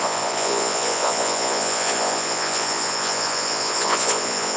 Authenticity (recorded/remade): remade